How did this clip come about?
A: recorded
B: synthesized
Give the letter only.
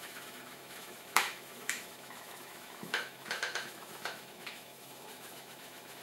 B